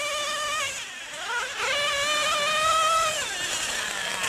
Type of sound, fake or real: real